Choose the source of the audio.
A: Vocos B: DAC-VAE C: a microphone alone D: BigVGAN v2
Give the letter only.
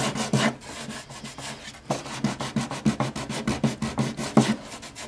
C